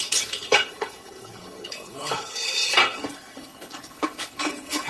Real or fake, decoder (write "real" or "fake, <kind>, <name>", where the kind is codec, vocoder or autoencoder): fake, codec, HILCodec